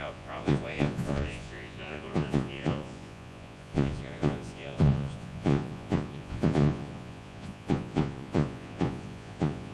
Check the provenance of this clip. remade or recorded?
remade